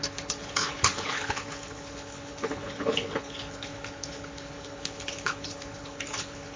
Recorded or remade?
remade